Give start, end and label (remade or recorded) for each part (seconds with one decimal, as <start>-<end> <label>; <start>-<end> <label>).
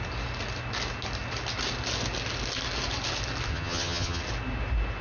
0.0-3.5 recorded; 3.5-4.2 remade; 4.2-5.0 recorded